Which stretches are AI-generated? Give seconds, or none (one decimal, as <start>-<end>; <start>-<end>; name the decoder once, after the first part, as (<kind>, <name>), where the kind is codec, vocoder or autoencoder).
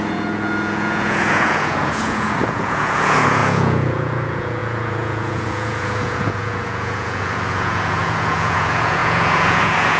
0.0-10.0 (vocoder, Vocos)